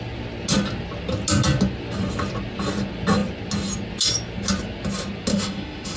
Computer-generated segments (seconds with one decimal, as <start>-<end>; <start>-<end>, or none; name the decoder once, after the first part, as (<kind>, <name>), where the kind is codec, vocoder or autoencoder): 5.3-6.0 (autoencoder, DAC-VAE)

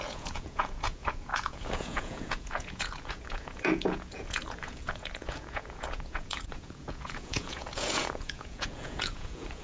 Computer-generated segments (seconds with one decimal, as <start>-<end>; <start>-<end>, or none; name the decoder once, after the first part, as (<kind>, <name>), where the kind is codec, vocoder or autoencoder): 0.0-9.6 (vocoder, Vocos)

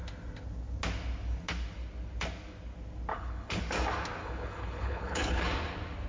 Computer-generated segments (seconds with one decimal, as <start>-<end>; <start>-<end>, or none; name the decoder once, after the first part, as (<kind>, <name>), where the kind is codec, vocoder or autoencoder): 3.1-3.6 (codec, HILCodec); 4.2-5.4

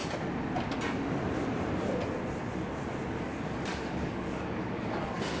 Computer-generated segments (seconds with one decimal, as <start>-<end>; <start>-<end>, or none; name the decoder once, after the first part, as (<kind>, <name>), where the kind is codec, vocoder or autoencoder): 3.2-5.4 (codec, DAC)

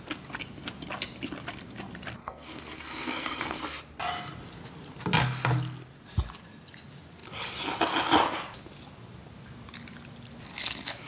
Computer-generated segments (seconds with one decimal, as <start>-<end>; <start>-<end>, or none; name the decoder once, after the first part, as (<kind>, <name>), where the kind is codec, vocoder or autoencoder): 2.2-3.6 (codec, SNAC)

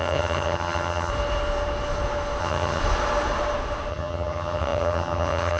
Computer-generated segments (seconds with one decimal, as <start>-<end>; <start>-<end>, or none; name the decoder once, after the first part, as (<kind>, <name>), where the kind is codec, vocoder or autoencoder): 0.0-1.1 (vocoder, HiFi-GAN); 2.4-2.8; 3.9-5.6

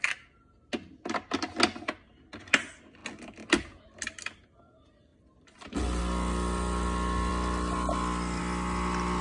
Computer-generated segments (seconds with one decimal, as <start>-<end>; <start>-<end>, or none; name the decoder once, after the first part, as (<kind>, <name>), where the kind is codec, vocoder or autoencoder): 5.1-6.0 (vocoder, BigVGAN v2)